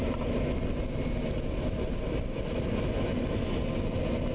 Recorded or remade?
recorded